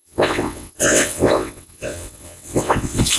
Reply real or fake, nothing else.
fake